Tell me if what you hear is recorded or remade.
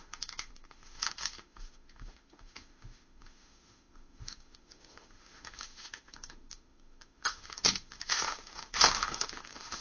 remade